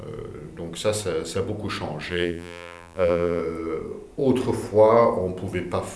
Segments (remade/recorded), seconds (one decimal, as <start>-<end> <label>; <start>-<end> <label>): 0.0-2.1 recorded; 2.1-3.4 remade; 3.4-6.0 recorded

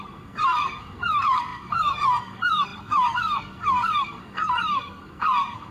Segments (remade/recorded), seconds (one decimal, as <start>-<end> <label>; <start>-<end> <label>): 0.0-5.7 remade

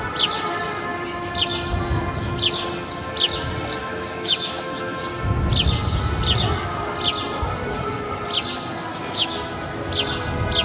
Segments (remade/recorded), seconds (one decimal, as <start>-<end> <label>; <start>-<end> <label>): 0.0-3.8 recorded; 3.8-5.0 remade; 5.0-8.9 recorded; 8.9-9.5 remade; 9.5-10.6 recorded